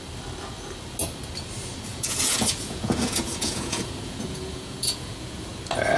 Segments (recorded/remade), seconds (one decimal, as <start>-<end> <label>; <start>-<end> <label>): 0.0-1.9 recorded; 1.9-5.5 remade; 5.5-6.0 recorded